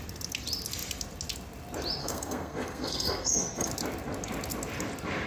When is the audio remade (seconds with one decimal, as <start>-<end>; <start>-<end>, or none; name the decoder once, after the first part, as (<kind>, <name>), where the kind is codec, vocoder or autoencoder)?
2.0-3.7 (codec, SNAC)